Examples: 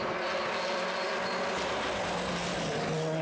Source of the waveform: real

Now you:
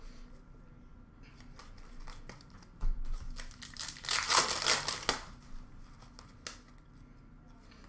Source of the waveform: real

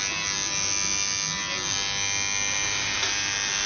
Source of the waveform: real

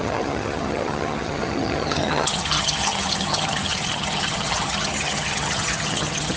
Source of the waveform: fake